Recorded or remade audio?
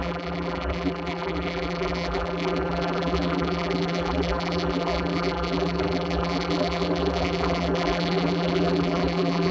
remade